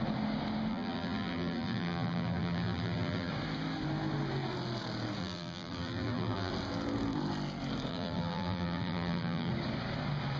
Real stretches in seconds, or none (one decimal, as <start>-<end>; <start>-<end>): 0.0-0.7; 3.3-5.2; 6.5-7.9; 9.5-10.4